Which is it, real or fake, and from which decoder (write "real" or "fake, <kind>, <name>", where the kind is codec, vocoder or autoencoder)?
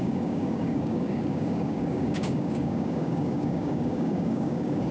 fake, codec, DAC